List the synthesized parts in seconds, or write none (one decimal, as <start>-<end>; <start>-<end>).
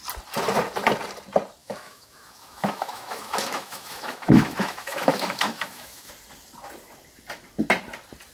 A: 1.6-6.1